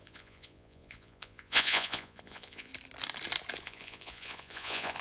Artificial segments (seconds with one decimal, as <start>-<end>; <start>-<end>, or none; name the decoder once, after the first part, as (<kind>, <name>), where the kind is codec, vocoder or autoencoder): 0.0-2.7 (vocoder, Vocos); 3.6-5.0